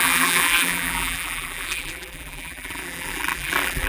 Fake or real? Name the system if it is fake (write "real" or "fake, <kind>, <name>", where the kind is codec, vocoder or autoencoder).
fake, vocoder, BigVGAN v2